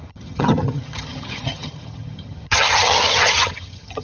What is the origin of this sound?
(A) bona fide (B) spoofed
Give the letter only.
B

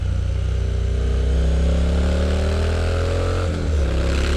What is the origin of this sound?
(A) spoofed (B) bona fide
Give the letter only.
B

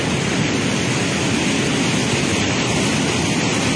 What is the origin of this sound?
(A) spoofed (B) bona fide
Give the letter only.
B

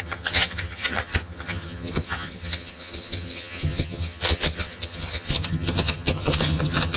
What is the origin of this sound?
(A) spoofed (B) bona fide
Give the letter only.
A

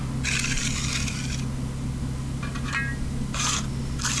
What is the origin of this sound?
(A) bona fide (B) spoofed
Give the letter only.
A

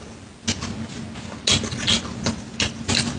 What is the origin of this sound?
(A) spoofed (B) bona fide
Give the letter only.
B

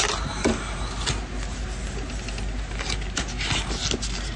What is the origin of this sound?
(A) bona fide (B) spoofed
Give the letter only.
A